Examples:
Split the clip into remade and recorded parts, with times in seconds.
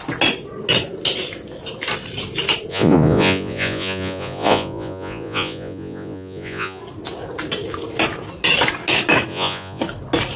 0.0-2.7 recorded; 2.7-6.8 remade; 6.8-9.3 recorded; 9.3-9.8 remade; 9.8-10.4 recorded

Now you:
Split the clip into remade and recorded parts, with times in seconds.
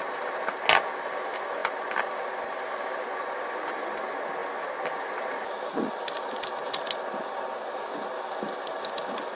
0.0-9.4 recorded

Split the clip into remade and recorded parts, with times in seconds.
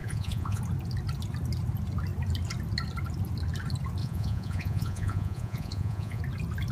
0.0-0.6 remade; 0.6-4.0 recorded; 4.0-6.2 remade; 6.2-6.7 recorded